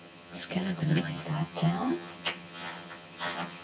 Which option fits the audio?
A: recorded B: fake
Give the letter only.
B